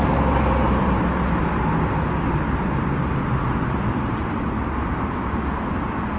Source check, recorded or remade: recorded